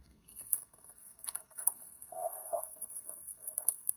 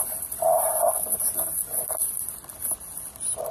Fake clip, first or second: first